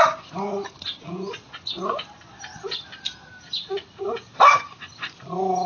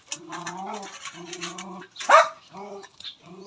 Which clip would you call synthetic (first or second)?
second